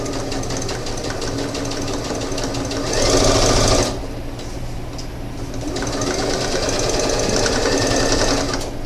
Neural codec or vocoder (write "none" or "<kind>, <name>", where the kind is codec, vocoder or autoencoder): none